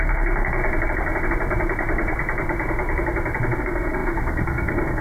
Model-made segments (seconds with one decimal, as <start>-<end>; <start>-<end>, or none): 0.0-0.6; 3.6-5.0